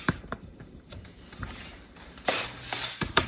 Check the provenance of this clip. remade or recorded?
remade